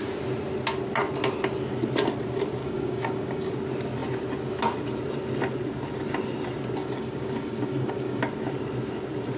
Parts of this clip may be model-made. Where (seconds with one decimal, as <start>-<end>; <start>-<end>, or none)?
2.6-3.5; 6.8-8.2